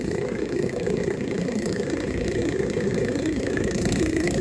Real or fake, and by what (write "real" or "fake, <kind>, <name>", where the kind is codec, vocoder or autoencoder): fake, codec, SNAC